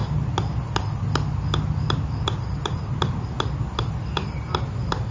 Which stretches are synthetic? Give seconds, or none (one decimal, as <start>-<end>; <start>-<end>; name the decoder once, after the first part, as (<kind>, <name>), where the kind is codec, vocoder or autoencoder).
none